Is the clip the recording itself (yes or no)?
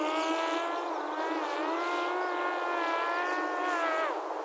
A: yes